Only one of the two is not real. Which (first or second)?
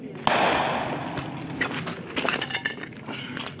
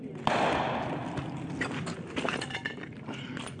second